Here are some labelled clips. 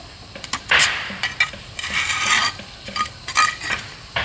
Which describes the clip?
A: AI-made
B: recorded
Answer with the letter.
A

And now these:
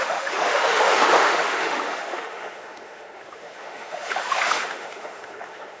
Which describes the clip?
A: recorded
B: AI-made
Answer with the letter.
B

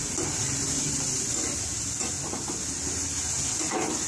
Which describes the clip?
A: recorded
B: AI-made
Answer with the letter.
A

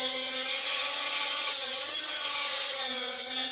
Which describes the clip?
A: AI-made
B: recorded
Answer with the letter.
A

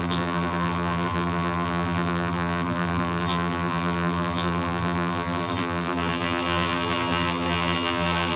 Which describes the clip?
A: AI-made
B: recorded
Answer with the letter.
A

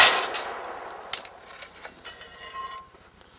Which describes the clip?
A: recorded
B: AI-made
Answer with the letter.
A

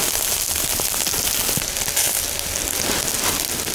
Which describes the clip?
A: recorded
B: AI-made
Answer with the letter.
A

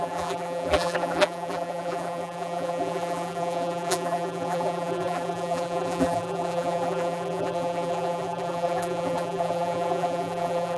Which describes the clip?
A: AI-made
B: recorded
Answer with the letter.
A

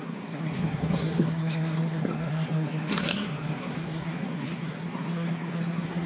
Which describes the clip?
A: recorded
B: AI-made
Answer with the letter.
B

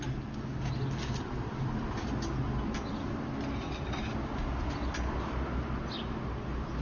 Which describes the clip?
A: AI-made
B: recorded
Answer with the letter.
B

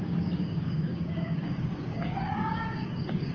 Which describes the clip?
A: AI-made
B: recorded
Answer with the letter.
A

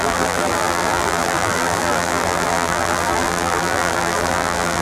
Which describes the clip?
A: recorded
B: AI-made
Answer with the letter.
B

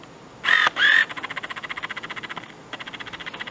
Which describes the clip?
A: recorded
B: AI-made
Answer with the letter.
A